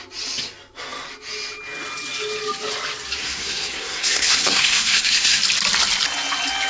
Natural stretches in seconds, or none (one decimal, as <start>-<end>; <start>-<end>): 0.0-3.2; 5.4-6.7

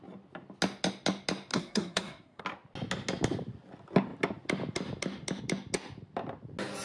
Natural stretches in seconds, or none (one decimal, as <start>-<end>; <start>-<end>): 0.0-1.5; 2.4-6.8

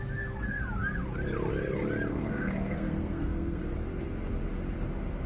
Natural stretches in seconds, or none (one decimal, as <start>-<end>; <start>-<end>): 0.0-2.1; 3.6-5.3

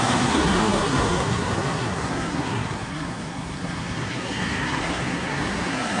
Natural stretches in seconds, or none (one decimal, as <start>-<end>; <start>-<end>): none

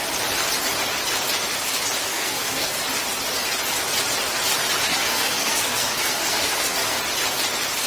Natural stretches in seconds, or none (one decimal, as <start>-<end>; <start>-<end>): 0.0-2.1; 2.8-4.9; 7.0-7.9

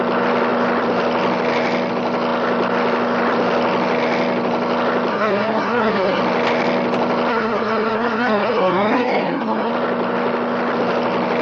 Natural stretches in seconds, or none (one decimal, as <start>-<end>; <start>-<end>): 0.0-5.1; 6.2-7.3; 9.7-11.4

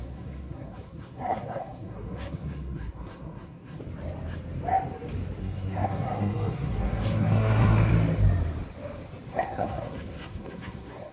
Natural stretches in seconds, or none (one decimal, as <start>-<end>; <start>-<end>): 3.8-5.4; 7.9-9.3